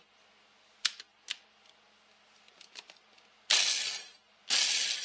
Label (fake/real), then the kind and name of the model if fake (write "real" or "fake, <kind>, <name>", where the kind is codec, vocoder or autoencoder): real